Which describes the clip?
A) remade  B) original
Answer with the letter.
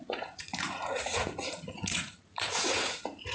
A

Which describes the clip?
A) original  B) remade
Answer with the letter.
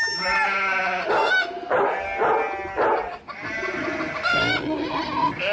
A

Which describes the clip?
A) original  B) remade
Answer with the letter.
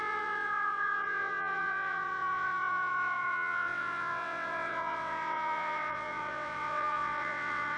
B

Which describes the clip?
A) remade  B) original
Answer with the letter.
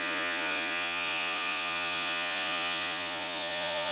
A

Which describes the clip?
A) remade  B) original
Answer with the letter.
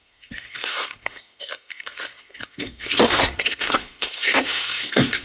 A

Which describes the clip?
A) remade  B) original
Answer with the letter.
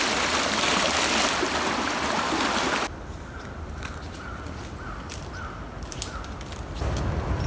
B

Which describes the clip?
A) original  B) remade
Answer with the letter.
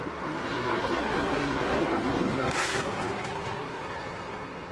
B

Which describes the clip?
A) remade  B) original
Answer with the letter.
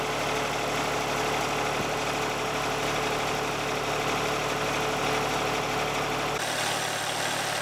B